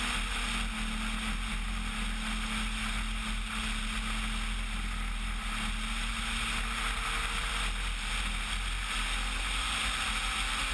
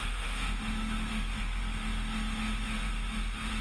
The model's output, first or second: second